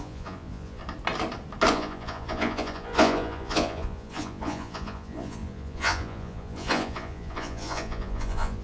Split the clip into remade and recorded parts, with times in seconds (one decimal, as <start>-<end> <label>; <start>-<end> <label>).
0.0-0.8 remade; 0.8-1.7 recorded; 1.7-8.6 remade